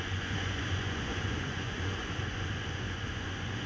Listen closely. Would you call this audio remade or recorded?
remade